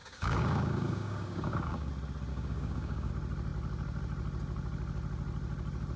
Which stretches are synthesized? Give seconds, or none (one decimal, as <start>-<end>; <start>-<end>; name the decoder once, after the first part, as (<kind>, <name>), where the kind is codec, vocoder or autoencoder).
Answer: 0.0-1.9 (codec, DAC); 2.3-3.1